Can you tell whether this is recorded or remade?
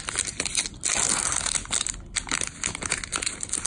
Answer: recorded